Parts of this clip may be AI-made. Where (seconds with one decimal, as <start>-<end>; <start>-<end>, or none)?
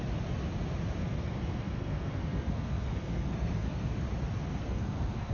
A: 1.0-3.9; 4.5-5.3